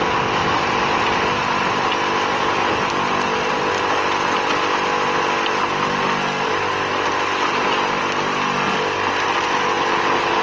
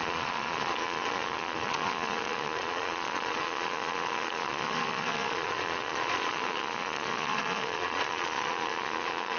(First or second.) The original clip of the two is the first